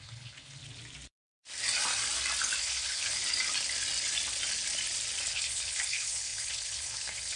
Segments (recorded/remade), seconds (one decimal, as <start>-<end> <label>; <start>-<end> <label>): 0.0-0.6 remade; 0.6-2.6 recorded; 2.6-3.2 remade; 3.2-5.3 recorded; 5.3-7.4 remade